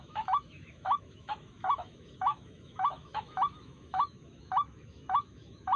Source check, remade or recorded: remade